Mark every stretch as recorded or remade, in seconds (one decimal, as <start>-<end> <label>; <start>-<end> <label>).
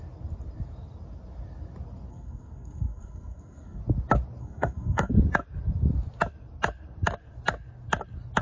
0.0-2.1 recorded; 2.1-3.8 remade; 3.8-4.4 recorded; 4.4-5.1 remade; 5.1-8.4 recorded